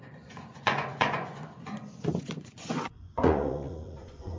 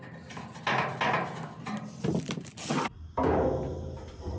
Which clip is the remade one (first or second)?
first